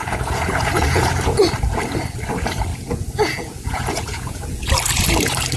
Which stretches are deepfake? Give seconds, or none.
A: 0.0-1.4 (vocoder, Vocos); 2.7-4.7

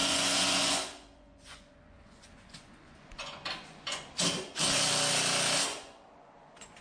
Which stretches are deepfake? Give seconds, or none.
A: 0.0-4.1 (vocoder, Vocos); 5.7-6.8